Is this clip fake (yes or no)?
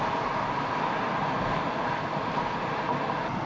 no